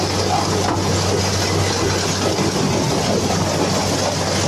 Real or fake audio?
real